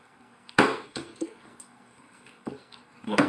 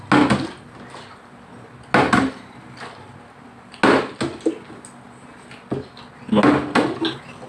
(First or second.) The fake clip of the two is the first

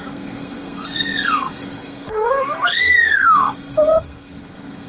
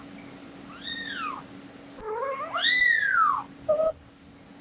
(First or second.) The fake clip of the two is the first